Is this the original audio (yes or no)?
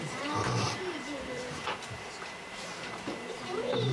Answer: no